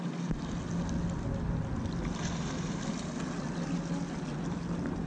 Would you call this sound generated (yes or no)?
no